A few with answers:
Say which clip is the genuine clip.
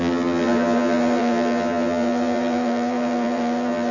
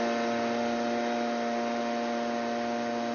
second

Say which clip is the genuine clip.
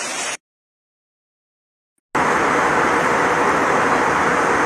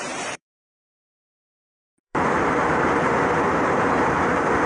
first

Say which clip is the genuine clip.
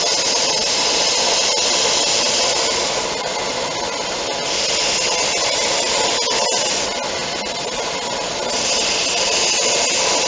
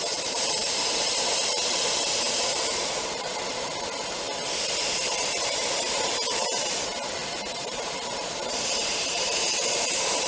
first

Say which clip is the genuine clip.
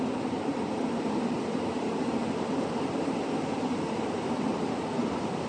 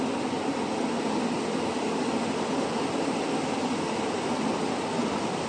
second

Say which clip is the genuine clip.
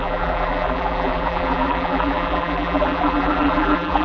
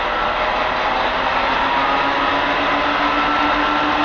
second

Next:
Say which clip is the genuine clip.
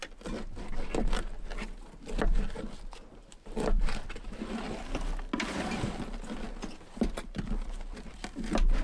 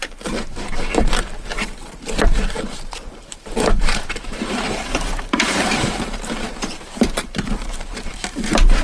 first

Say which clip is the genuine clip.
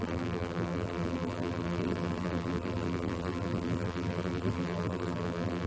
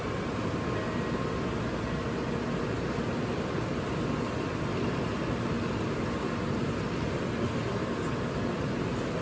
second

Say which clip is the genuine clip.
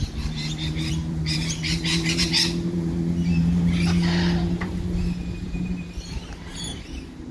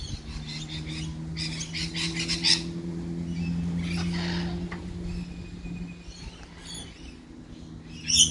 second